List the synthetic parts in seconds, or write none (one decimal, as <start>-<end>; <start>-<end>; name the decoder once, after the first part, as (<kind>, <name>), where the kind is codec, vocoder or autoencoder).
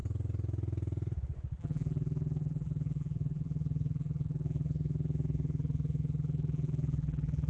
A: 1.6-7.5 (vocoder, BigVGAN v2)